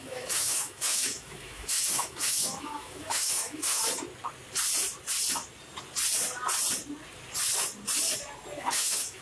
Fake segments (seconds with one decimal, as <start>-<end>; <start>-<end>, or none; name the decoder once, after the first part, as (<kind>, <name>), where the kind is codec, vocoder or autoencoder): 0.0-3.8 (autoencoder, DAC-VAE); 8.6-9.2